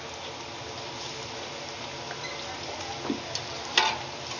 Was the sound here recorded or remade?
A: recorded